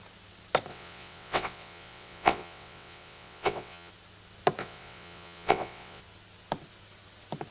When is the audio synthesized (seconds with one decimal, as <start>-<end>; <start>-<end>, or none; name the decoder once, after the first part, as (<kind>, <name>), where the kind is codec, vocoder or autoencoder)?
0.7-3.9 (vocoder, WaveNeXt); 4.6-6.0